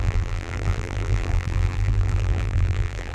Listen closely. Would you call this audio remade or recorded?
remade